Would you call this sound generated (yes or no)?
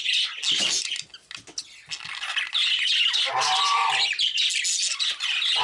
no